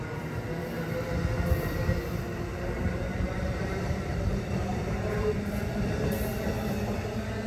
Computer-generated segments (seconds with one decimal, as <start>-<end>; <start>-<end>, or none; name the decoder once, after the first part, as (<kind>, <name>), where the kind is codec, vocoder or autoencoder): 2.5-5.8 (vocoder, BigVGAN v2)

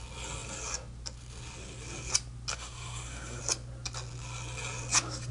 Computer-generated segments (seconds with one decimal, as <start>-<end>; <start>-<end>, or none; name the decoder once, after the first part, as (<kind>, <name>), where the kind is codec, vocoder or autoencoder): 2.5-3.4 (codec, SNAC)

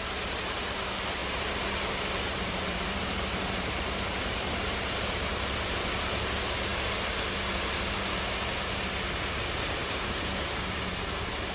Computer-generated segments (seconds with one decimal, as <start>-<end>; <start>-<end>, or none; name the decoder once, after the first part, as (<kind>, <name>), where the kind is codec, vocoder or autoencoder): 1.2-5.8 (vocoder, BigVGAN v2); 9.8-10.8

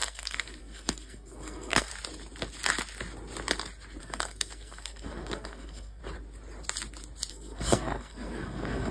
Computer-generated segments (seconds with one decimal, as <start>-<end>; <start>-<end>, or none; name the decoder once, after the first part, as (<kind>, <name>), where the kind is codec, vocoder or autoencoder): 0.0-1.9 (codec, SNAC); 4.0-6.0; 7.3-8.9